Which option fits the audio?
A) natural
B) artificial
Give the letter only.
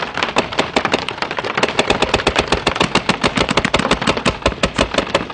A